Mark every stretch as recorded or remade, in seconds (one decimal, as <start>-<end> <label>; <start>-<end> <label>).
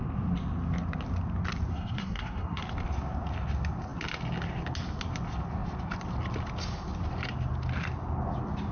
0.0-1.7 recorded; 1.7-2.6 remade; 2.6-8.7 recorded